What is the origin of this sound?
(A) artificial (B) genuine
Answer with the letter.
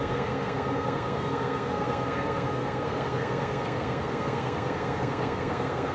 A